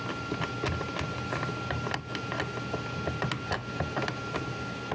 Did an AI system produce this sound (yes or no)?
no